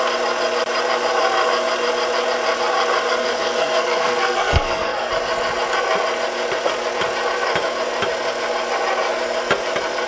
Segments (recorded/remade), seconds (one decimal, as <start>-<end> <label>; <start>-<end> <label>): 0.0-3.2 recorded; 3.2-5.1 remade; 5.1-10.1 recorded